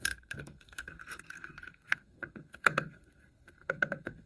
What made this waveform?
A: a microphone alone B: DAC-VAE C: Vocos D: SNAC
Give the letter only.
D